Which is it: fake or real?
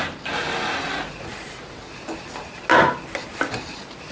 real